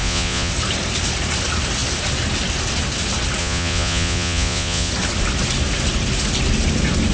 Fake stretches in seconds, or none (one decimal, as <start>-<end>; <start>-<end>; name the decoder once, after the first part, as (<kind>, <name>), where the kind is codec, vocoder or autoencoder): 0.0-0.5 (vocoder, Vocos); 3.4-4.9